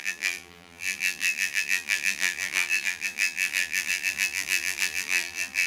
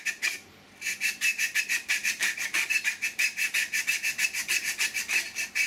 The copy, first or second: first